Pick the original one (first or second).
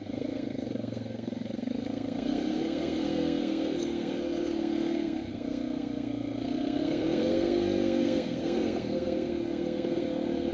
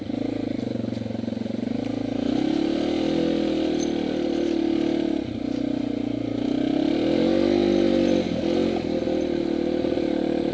second